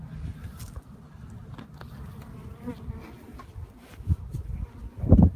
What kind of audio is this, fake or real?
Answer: real